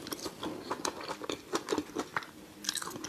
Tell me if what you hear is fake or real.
real